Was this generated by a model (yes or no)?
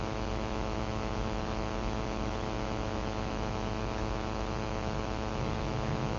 yes